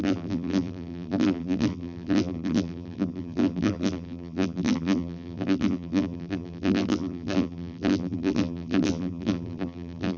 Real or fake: fake